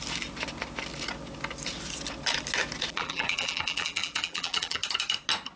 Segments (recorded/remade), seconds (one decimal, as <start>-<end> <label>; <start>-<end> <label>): 0.0-2.9 recorded; 2.9-4.8 remade; 4.8-5.6 recorded